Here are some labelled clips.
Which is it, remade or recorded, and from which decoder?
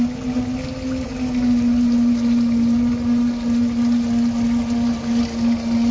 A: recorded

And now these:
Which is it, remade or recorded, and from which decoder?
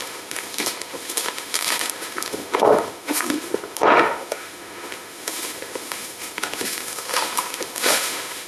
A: remade, autoencoder, DAC-VAE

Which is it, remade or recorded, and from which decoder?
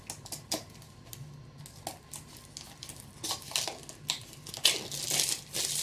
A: recorded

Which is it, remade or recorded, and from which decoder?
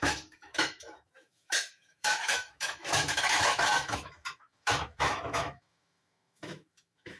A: remade, autoencoder, DAC-VAE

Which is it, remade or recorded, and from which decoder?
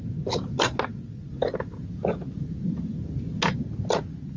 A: recorded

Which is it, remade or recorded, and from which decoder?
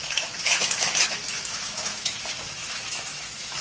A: remade, autoencoder, DAC-VAE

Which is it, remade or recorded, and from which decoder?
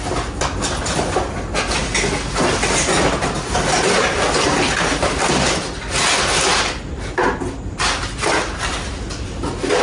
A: recorded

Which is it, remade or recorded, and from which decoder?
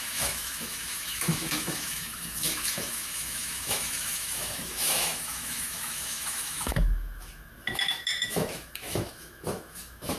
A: remade, autoencoder, DAC-VAE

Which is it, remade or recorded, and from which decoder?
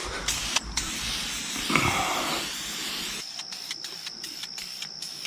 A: recorded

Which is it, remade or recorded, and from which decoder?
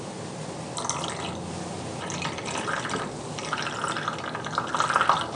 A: recorded